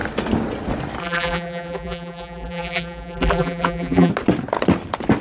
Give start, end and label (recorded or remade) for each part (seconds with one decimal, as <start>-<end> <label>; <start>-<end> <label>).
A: 0.0-1.0 recorded; 1.0-4.1 remade; 4.1-5.2 recorded